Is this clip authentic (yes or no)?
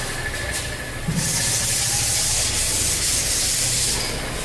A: yes